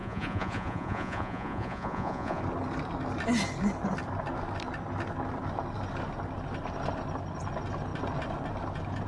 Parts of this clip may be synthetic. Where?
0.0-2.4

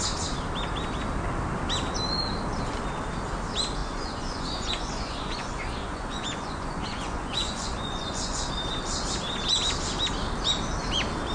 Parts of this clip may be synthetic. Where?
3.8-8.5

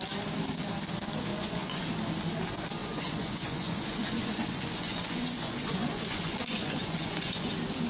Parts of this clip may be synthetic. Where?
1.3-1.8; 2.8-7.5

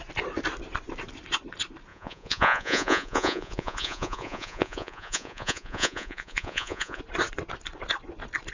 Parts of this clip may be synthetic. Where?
1.9-7.0

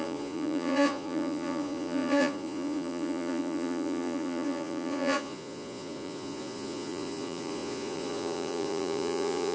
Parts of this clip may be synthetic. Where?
0.0-9.5